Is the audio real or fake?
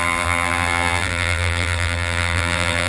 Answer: fake